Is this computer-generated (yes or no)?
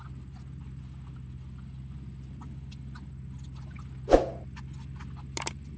no